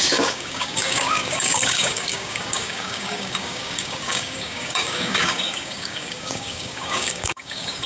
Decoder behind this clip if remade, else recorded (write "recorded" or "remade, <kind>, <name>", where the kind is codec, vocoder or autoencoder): remade, codec, DAC